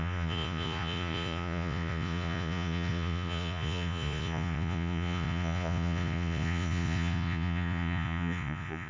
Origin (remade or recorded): remade